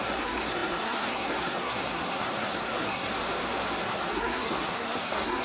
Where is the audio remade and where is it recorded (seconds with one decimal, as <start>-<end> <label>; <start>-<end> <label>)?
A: 0.0-3.1 remade; 3.1-3.8 recorded; 3.8-5.4 remade